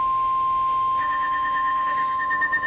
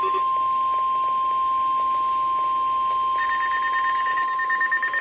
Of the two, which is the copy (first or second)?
first